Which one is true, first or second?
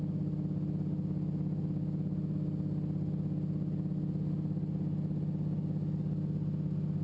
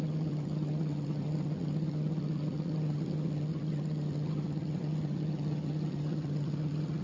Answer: first